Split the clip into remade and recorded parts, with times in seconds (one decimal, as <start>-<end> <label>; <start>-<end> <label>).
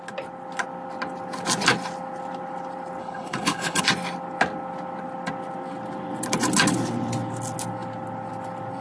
0.0-3.0 recorded; 3.0-3.8 remade; 3.8-8.8 recorded